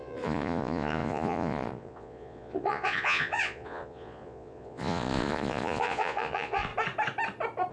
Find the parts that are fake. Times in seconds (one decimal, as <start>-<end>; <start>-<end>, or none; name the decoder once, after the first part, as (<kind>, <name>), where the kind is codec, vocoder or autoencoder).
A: 0.0-6.7 (vocoder, Vocos)